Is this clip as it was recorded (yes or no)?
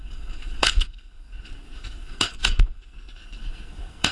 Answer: no